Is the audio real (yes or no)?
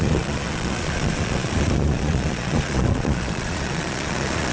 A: no